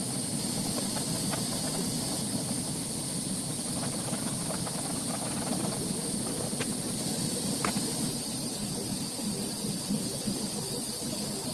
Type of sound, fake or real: real